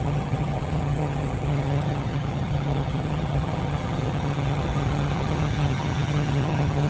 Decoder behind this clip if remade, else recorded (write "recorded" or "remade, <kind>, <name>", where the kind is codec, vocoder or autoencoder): remade, vocoder, HiFi-GAN